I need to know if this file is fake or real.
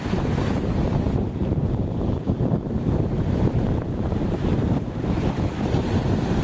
fake